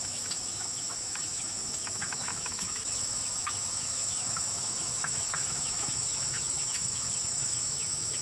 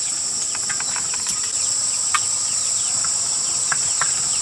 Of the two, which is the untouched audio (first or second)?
second